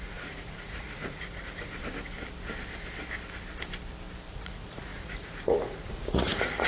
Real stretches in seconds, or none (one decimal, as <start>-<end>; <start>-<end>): 1.8-4.3